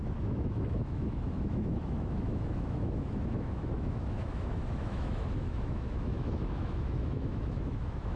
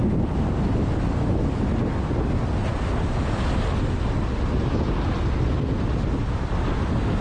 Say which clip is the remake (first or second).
first